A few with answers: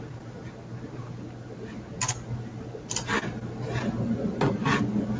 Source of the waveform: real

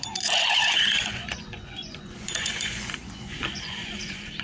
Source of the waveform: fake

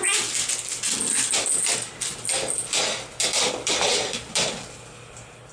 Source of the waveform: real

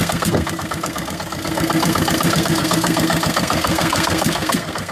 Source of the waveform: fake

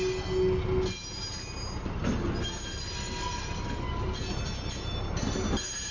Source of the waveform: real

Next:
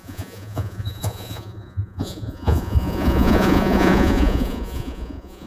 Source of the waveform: fake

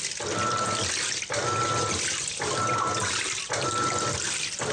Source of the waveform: real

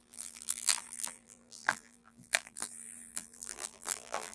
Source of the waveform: fake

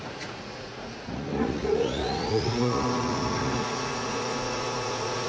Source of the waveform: fake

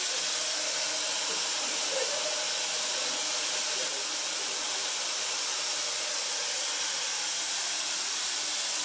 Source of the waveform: real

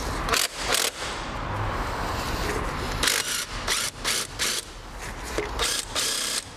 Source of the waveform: real